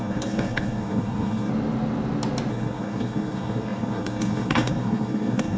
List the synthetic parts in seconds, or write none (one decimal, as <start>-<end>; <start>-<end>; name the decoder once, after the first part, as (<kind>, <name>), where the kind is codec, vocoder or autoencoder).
0.0-1.5 (codec, SNAC); 2.5-5.6